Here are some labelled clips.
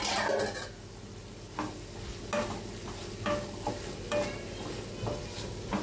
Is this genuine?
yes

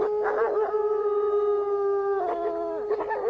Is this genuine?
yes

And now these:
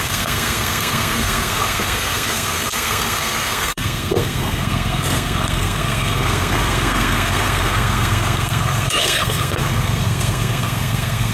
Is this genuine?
no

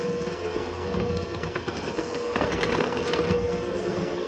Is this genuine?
no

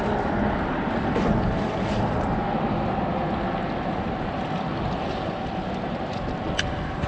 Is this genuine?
yes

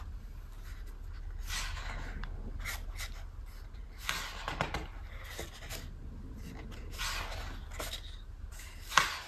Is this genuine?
yes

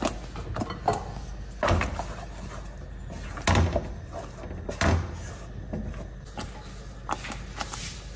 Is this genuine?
yes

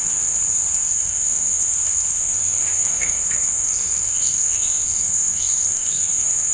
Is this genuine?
no